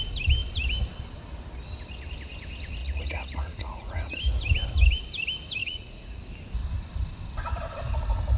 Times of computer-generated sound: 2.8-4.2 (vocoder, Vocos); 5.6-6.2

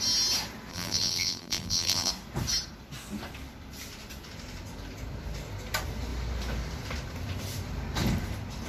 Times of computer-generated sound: 0.7-2.1 (vocoder, BigVGAN v2)